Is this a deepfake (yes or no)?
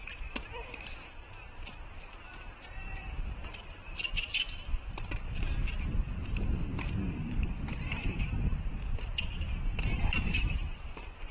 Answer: yes